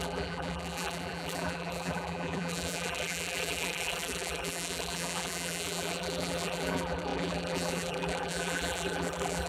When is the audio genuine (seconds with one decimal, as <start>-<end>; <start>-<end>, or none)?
none